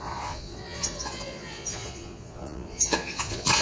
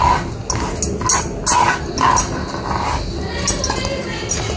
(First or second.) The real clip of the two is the second